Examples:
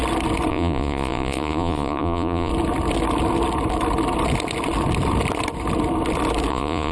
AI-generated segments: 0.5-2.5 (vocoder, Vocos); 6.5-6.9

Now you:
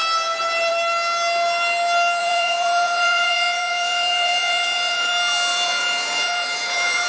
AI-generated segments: 2.2-5.1 (vocoder, Vocos); 5.5-7.1

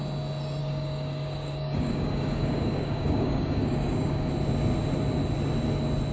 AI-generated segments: 0.6-4.3 (codec, DAC)

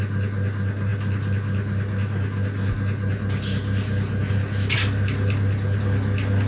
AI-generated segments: none

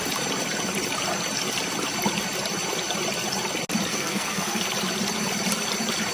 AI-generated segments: 3.9-4.6 (codec, SNAC)

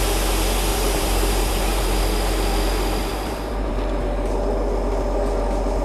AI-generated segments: 0.7-2.0 (vocoder, BigVGAN v2); 3.1-3.7

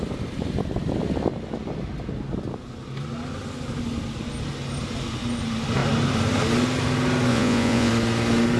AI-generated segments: 7.3-7.9 (vocoder, Vocos)

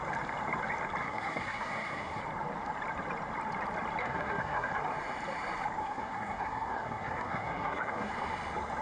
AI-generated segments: 1.0-2.2 (codec, SNAC); 4.0-4.7; 5.8-8.1